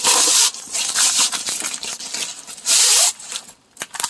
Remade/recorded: recorded